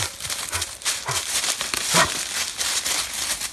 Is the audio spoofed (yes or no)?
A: no